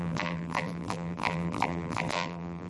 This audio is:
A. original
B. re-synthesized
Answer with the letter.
B